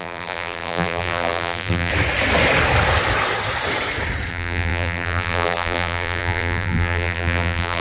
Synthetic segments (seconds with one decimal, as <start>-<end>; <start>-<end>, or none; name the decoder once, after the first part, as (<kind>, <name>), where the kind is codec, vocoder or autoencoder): 0.0-1.9 (vocoder, BigVGAN v2); 4.3-7.8